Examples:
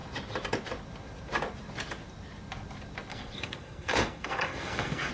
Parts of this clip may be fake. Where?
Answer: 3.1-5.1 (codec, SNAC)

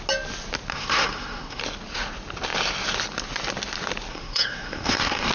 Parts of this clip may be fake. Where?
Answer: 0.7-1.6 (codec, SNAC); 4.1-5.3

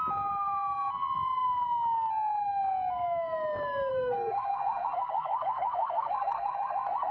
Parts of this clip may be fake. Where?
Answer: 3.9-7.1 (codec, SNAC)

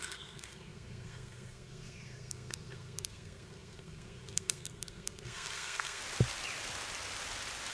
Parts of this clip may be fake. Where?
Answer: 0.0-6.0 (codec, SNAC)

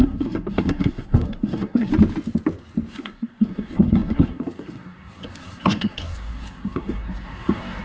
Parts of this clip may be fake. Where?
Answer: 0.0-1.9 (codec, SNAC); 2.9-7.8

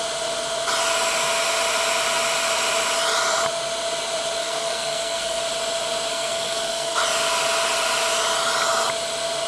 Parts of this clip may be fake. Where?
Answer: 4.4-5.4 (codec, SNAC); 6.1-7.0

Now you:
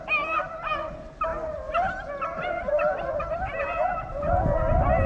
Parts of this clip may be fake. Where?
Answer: none